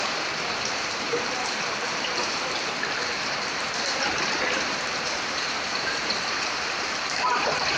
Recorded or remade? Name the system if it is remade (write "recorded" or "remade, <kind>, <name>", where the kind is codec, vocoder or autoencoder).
remade, vocoder, BigVGAN v2